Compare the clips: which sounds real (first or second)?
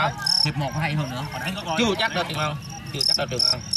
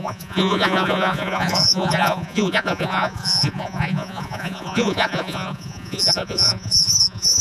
first